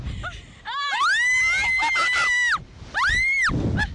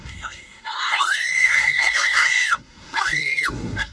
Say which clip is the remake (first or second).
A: second